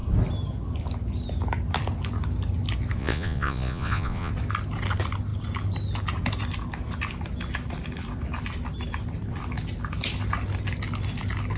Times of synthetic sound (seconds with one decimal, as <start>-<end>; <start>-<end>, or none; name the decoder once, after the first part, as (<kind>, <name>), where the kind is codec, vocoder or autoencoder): 3.0-4.3 (vocoder, Vocos)